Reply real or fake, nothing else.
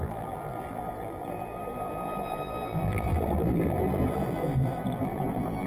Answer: fake